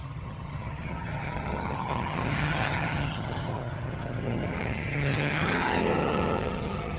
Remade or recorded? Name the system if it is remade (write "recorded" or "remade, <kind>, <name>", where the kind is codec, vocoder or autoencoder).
remade, vocoder, HiFi-GAN